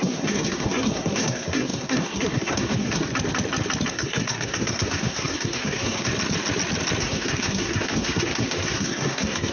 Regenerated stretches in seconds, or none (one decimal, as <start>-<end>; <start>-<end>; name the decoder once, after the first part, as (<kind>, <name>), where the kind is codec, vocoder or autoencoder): 0.0-3.1 (codec, SNAC); 3.9-6.1; 7.0-9.5